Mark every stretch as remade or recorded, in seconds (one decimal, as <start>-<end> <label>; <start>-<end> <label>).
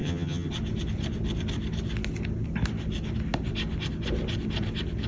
0.0-0.5 remade; 0.5-5.1 recorded